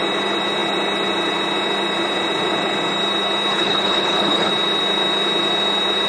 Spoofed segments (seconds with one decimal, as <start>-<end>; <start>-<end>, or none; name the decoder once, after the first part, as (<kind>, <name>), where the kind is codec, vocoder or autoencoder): 3.5-4.5 (codec, HILCodec)